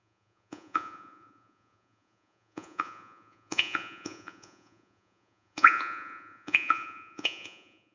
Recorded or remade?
remade